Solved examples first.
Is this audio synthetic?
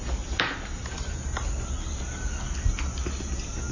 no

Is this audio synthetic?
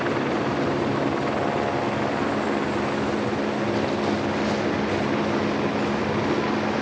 no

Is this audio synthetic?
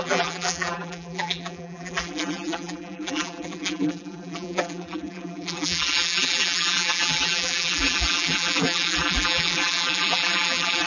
yes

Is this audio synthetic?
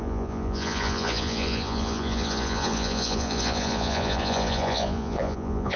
yes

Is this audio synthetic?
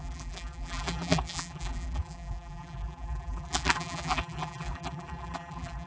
yes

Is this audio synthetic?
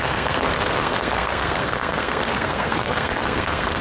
yes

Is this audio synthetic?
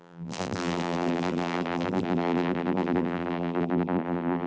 yes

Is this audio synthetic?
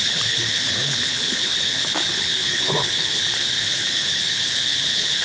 yes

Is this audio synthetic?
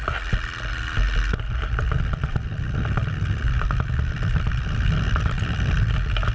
no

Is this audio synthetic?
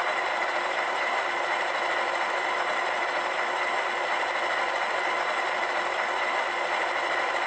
no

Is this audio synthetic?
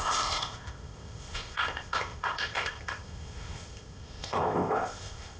yes